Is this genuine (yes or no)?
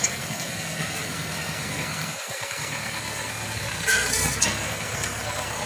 no